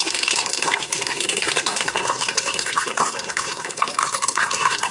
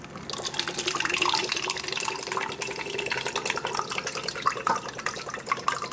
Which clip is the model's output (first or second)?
first